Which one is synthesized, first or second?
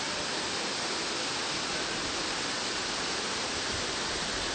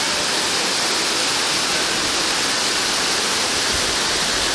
first